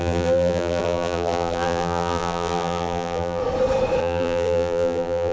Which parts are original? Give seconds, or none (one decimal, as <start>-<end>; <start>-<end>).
3.4-4.0